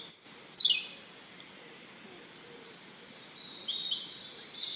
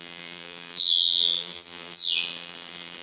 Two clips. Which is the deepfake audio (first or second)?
second